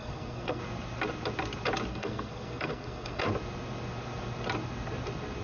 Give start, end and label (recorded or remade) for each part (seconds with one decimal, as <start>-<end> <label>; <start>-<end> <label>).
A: 0.0-0.6 remade; 0.6-1.9 recorded; 1.9-3.2 remade; 3.2-5.4 recorded

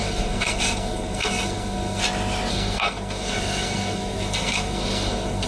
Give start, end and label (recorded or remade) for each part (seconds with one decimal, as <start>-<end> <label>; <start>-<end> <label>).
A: 0.0-2.0 remade; 2.0-2.5 recorded; 2.5-5.5 remade

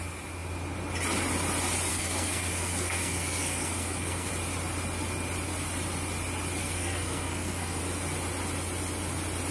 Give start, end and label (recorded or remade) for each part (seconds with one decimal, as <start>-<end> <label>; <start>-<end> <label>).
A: 0.0-1.9 recorded; 1.9-4.3 remade; 4.3-6.6 recorded; 6.6-7.8 remade; 7.8-9.5 recorded

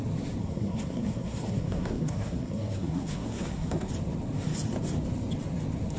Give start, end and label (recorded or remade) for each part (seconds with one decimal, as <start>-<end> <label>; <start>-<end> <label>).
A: 0.0-0.4 recorded; 0.4-3.9 remade; 3.9-6.0 recorded

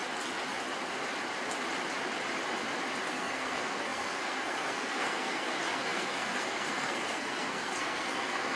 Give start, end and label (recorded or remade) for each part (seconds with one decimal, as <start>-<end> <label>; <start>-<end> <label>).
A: 0.0-3.1 recorded; 3.1-8.6 remade

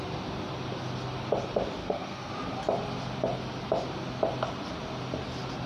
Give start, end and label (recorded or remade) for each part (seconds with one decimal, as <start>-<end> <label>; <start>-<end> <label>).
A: 0.0-1.8 recorded; 1.8-2.3 remade; 2.3-5.7 recorded